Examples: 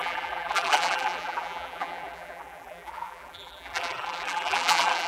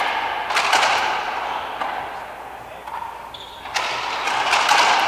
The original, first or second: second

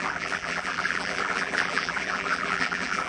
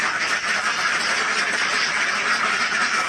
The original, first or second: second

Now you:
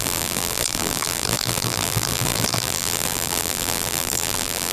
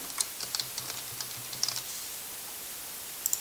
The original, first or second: second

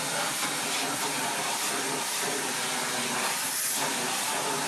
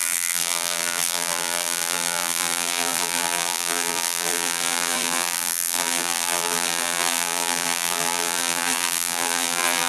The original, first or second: first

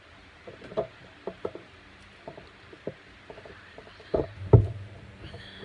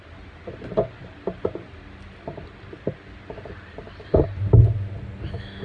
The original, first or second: second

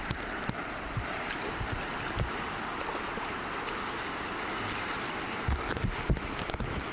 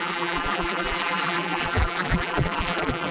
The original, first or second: first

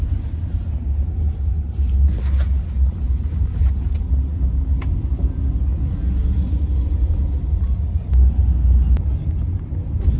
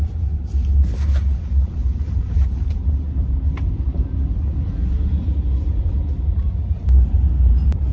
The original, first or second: first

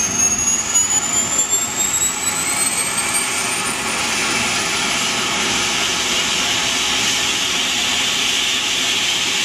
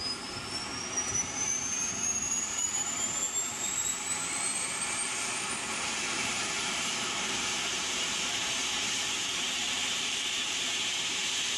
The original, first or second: first